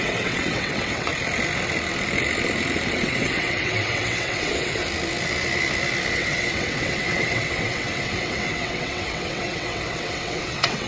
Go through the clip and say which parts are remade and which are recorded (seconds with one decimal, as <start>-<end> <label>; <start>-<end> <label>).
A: 0.0-1.1 remade; 1.1-2.9 recorded; 2.9-4.8 remade; 4.8-6.1 recorded; 6.1-10.9 remade